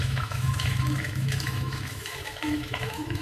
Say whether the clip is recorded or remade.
remade